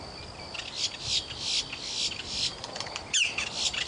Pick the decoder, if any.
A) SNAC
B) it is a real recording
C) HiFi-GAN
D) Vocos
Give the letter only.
B